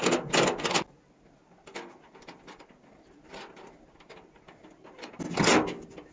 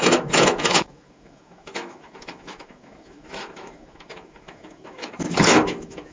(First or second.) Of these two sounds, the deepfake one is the second